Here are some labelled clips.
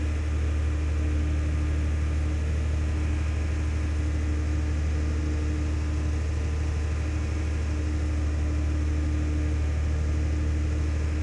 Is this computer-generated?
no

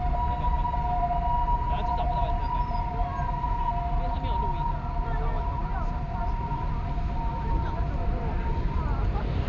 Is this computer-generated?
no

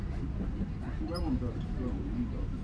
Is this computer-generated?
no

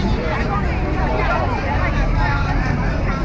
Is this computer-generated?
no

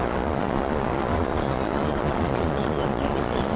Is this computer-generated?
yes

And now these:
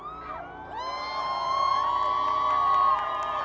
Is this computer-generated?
no